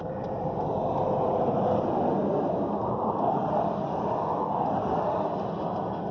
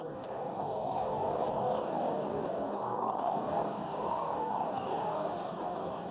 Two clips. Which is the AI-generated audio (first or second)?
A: second